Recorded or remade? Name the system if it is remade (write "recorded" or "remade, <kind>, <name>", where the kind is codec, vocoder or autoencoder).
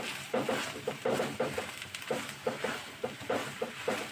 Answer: remade, vocoder, BigVGAN v2